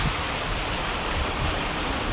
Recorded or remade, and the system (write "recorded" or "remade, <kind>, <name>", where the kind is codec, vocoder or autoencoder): recorded